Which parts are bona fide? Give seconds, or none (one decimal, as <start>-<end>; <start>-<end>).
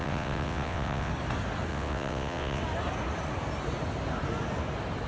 1.1-1.7; 2.6-5.1